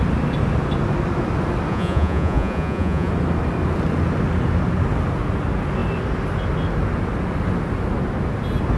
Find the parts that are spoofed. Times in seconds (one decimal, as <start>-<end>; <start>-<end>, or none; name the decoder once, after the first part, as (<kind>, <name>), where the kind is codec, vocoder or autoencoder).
1.7-3.1 (vocoder, Vocos)